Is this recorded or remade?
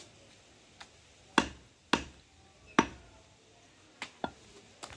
recorded